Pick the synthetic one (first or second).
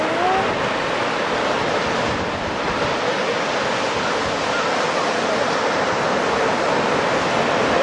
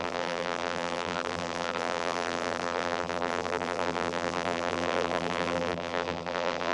second